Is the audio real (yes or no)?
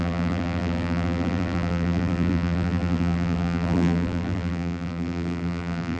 no